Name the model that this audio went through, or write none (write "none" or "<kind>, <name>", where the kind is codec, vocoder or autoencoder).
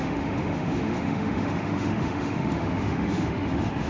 autoencoder, DAC-VAE